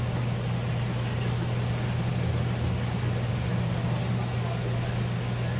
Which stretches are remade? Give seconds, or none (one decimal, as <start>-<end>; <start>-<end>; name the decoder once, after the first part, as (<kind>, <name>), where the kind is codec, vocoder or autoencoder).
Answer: none